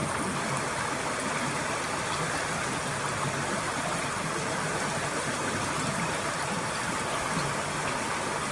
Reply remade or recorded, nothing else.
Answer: recorded